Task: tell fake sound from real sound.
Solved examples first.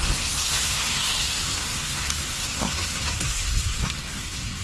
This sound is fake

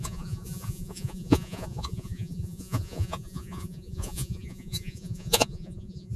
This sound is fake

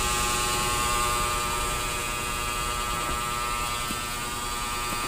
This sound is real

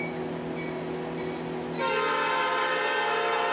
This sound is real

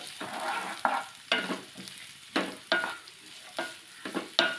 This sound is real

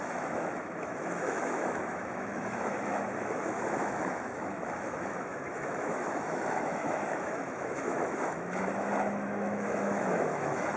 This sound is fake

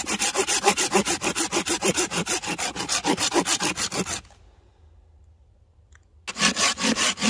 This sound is real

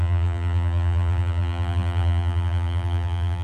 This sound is fake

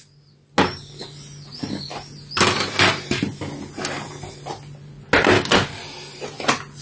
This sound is real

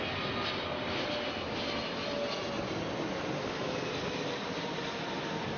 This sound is real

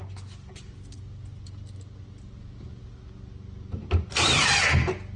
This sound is real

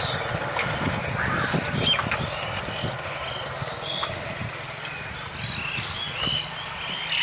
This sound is real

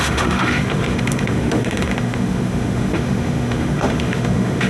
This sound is fake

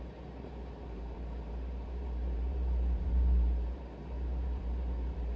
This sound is fake